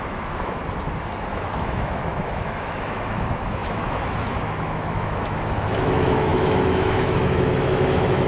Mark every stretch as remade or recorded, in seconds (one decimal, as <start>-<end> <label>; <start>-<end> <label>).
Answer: 0.0-0.6 remade; 0.6-1.3 recorded; 1.3-8.3 remade